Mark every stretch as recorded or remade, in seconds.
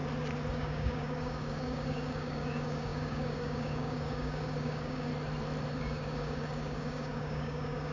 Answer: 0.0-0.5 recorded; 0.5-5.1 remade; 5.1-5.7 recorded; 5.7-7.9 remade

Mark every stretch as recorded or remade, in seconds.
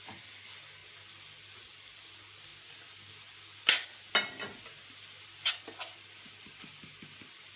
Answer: 0.0-7.6 recorded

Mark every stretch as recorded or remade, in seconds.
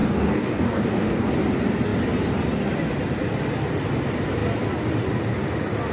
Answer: 0.0-1.3 remade; 1.3-5.9 recorded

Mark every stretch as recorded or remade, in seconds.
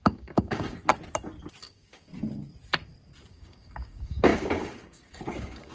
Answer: 0.0-0.9 remade; 0.9-1.6 recorded; 1.6-2.1 remade; 2.1-3.3 recorded; 3.3-5.7 remade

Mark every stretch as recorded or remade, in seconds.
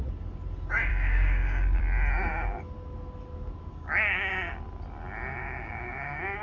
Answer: 0.0-0.9 recorded; 0.9-1.8 remade; 1.8-3.7 recorded; 3.7-4.3 remade; 4.3-5.4 recorded; 5.4-6.4 remade